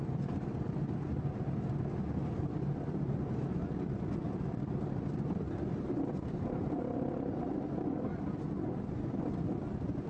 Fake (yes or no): no